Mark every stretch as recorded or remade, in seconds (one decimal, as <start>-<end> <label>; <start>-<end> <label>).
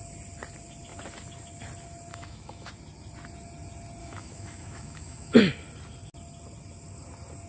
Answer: 0.0-2.1 recorded; 2.1-2.7 remade; 2.7-4.0 recorded; 4.0-5.4 remade; 5.4-7.5 recorded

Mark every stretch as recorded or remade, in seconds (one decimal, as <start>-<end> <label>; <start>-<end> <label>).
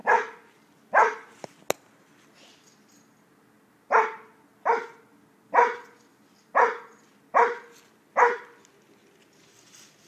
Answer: 0.0-10.1 recorded